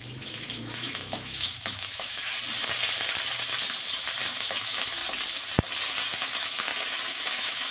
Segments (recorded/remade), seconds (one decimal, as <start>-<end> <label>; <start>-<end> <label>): 0.0-2.2 remade; 2.2-4.2 recorded; 4.2-5.0 remade; 5.0-6.2 recorded; 6.2-6.7 remade; 6.7-7.3 recorded; 7.3-7.7 remade